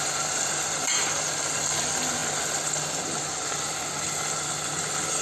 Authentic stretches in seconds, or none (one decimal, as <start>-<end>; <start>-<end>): 0.0-5.2